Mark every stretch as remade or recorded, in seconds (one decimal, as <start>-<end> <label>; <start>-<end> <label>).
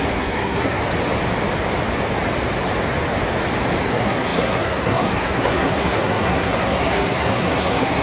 0.0-0.8 remade; 0.8-3.9 recorded; 3.9-8.0 remade